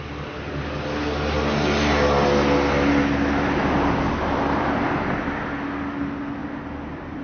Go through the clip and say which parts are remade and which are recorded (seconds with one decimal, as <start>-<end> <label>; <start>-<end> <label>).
0.0-6.4 recorded; 6.4-7.2 remade